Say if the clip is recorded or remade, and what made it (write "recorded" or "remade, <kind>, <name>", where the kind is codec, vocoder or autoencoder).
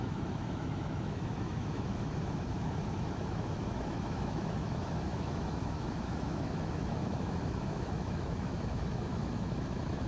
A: remade, autoencoder, DAC-VAE